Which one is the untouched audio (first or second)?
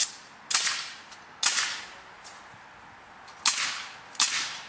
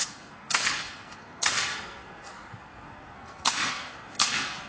first